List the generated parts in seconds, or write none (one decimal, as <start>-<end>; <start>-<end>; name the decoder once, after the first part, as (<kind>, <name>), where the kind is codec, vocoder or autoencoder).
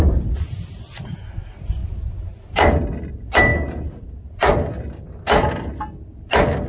none